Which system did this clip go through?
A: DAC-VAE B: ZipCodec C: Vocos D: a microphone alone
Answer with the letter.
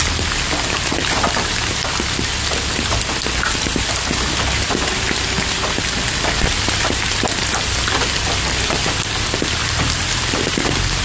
D